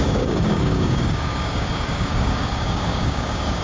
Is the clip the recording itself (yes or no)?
no